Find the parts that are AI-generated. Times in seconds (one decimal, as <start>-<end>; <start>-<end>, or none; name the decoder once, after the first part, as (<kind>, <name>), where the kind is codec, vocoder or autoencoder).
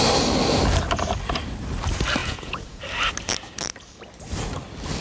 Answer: 2.2-2.8 (vocoder, Vocos)